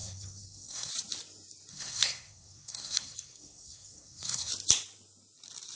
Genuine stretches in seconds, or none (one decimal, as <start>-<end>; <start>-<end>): 0.9-1.7; 4.5-5.8